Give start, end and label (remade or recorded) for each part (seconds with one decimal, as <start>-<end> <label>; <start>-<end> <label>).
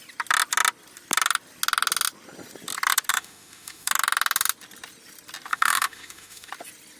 0.0-3.1 recorded; 3.1-3.9 remade; 3.9-5.5 recorded; 5.5-6.5 remade; 6.5-7.0 recorded